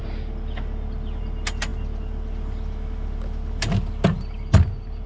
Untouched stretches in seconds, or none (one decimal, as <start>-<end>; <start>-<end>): 0.0-5.1